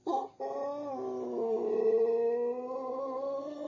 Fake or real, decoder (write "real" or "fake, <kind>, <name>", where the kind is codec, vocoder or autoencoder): real